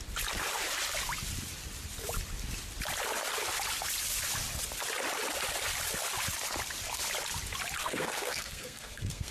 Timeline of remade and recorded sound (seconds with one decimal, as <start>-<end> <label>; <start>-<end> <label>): 0.0-7.8 recorded; 7.8-9.3 remade

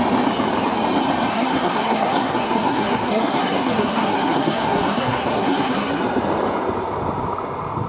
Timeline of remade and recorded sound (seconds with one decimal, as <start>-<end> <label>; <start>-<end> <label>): 0.0-1.3 recorded; 1.3-6.0 remade; 6.0-7.9 recorded